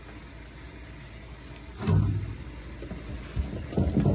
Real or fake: real